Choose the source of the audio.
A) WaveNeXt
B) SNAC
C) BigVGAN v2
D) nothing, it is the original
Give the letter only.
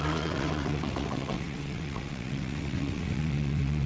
A